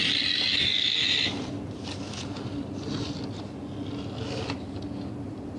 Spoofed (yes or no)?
no